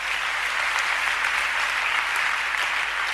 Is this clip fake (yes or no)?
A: no